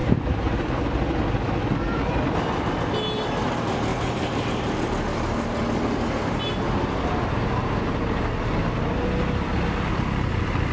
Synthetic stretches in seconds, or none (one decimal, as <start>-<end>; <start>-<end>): 0.0-1.0; 3.9-4.7